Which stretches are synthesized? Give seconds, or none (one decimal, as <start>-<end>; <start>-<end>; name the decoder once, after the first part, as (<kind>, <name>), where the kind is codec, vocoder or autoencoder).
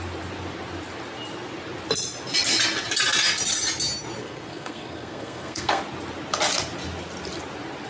4.2-5.8 (codec, SNAC)